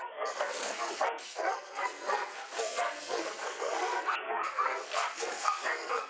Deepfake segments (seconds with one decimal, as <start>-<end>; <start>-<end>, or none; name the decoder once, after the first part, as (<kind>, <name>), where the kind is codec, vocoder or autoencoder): 0.0-6.1 (codec, SNAC)